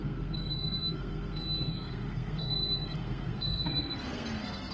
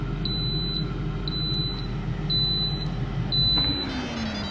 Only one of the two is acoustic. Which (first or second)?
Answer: second